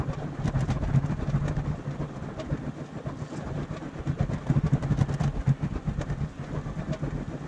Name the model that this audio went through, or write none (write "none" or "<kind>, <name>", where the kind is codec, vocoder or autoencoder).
none